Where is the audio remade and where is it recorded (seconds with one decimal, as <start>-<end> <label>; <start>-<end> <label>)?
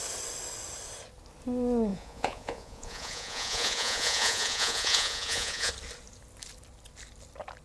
0.0-1.9 recorded; 1.9-5.7 remade; 5.7-7.6 recorded